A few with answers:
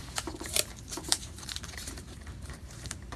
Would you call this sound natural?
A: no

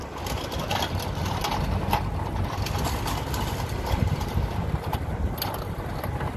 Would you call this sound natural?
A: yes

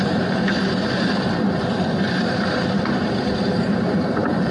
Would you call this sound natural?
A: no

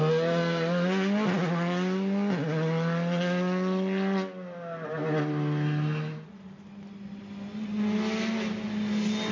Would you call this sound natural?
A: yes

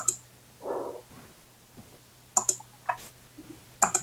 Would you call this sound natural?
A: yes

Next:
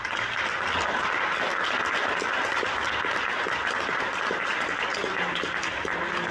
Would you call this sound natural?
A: yes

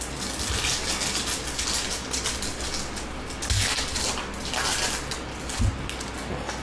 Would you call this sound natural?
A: yes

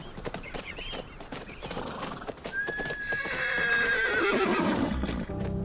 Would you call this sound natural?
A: no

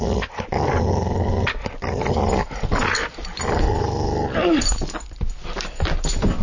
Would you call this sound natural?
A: yes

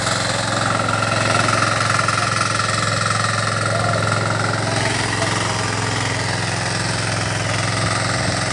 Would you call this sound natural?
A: yes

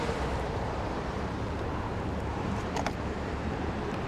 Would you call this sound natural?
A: no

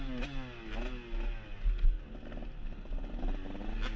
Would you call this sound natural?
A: yes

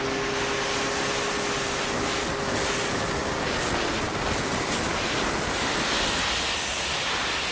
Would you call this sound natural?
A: yes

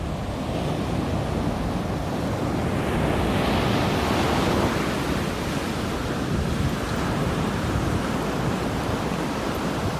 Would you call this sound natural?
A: yes